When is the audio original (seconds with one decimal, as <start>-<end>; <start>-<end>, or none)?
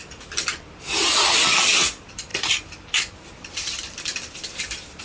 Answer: 0.0-0.9